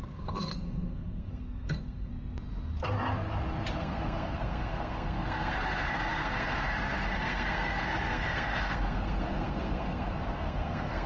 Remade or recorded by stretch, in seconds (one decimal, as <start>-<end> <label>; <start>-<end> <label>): 0.0-2.1 remade; 2.1-3.8 recorded; 3.8-11.1 remade

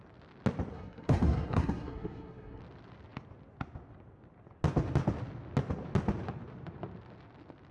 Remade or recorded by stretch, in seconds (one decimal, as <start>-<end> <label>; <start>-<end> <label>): 0.0-0.7 recorded; 0.7-2.6 remade; 2.6-7.7 recorded

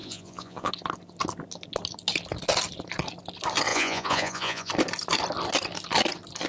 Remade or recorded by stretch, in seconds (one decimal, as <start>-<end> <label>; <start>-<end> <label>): 0.0-0.7 remade; 0.7-3.7 recorded; 3.7-4.7 remade; 4.7-6.5 recorded

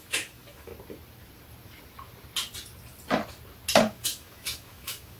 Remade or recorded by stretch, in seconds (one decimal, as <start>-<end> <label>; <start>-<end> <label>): 0.0-0.7 remade; 0.7-3.8 recorded; 3.8-5.2 remade

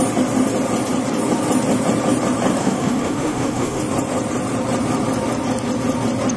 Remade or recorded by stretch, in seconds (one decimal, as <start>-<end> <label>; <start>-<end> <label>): 0.0-2.6 recorded; 2.6-3.8 remade; 3.8-6.4 recorded

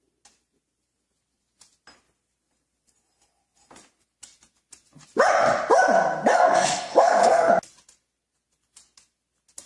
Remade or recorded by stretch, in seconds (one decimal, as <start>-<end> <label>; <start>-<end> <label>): 0.0-6.3 recorded; 6.3-7.5 remade; 7.5-9.7 recorded

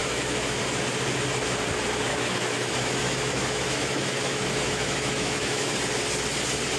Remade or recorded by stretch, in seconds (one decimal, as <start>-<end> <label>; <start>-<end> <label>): 0.0-0.6 remade; 0.6-2.1 recorded; 2.1-5.7 remade; 5.7-6.8 recorded